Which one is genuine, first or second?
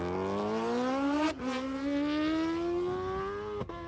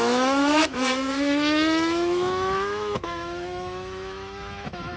first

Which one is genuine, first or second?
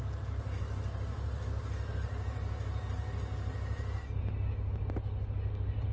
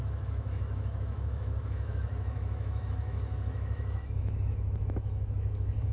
first